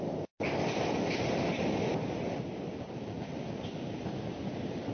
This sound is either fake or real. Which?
real